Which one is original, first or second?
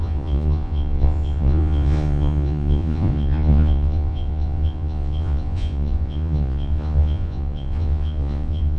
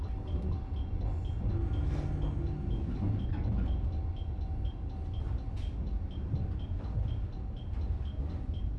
second